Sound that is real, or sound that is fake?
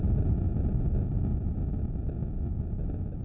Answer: real